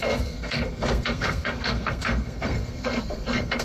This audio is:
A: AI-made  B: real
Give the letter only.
A